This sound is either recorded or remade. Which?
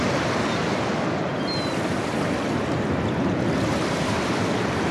recorded